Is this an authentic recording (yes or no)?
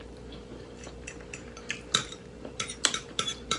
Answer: no